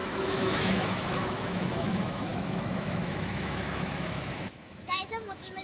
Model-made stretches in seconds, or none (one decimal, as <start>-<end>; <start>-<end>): 0.0-5.6